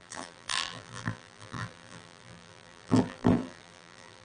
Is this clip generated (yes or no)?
yes